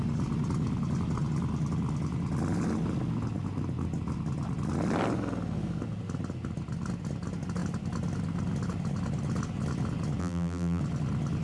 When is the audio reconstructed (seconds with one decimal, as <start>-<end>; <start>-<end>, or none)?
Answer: 10.2-10.8